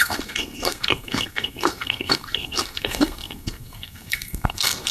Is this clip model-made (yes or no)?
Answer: yes